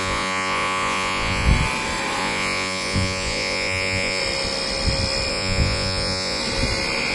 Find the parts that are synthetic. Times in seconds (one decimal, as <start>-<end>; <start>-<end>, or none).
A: 0.0-1.5; 2.2-4.2; 5.3-6.4